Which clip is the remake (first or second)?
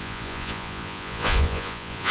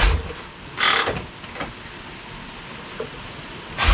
first